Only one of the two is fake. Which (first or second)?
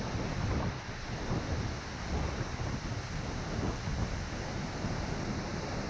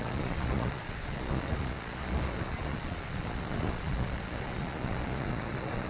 second